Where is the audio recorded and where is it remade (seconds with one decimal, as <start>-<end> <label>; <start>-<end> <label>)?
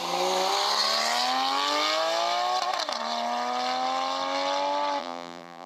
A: 0.0-5.0 recorded; 5.0-5.7 remade